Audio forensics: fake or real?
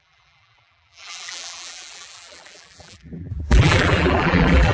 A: fake